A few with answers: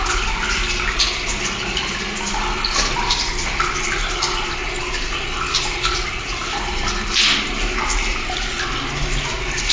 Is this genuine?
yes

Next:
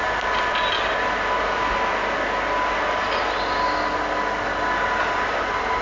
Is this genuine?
yes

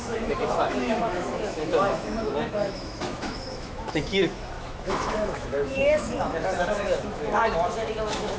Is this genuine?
no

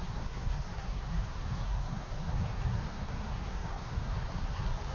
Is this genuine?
no